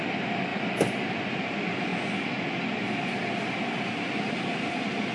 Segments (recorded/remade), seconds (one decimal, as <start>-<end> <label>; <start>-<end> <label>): 0.0-5.1 recorded